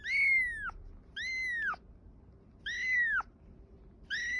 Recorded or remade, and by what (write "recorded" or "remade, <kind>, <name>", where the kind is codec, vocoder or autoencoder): recorded